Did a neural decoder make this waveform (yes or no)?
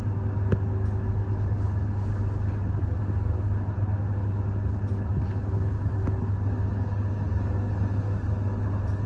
no